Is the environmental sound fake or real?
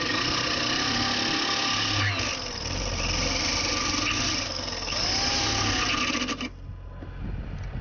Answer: real